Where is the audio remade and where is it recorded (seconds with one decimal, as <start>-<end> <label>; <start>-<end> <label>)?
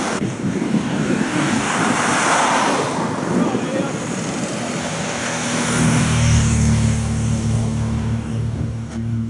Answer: 0.0-1.8 remade; 1.8-4.8 recorded; 4.8-9.3 remade